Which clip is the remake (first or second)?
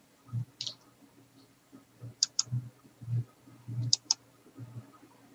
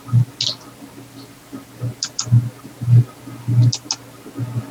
first